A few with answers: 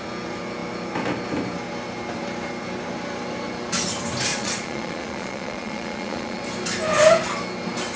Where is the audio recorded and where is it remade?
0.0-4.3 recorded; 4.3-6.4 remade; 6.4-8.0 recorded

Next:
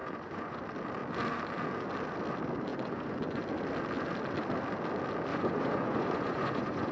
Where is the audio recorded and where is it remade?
0.0-0.6 remade; 0.6-2.7 recorded; 2.7-3.4 remade; 3.4-5.3 recorded; 5.3-6.9 remade

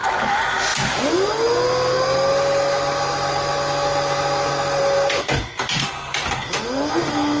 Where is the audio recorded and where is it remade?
0.0-7.4 recorded

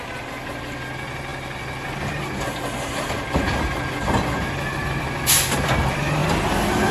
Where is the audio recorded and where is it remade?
0.0-6.9 recorded